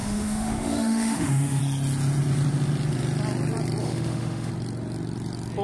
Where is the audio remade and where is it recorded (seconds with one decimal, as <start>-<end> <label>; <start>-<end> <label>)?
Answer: 0.0-1.6 remade; 1.6-3.8 recorded; 3.8-4.5 remade; 4.5-5.6 recorded